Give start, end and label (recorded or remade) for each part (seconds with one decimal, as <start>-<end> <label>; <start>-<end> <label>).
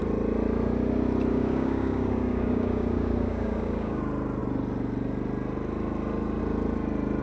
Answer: 0.0-1.3 recorded; 1.3-4.0 remade; 4.0-7.2 recorded